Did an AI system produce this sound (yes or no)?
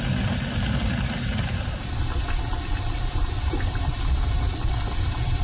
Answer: yes